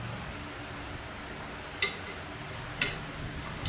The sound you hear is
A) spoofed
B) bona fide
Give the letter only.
B